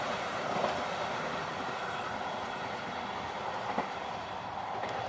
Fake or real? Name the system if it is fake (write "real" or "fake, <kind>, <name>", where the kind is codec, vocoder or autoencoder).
real